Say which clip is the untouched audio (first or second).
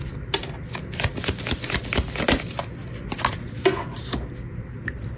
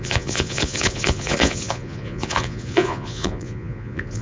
first